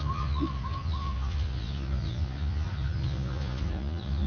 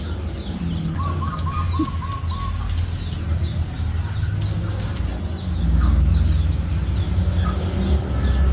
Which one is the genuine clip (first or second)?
second